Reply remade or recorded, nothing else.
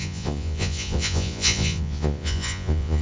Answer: remade